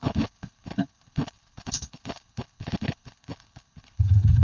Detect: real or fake fake